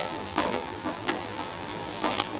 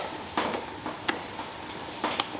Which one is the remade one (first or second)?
first